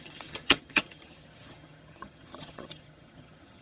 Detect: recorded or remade remade